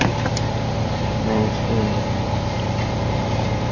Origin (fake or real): real